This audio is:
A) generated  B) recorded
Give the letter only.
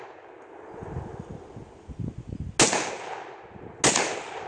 B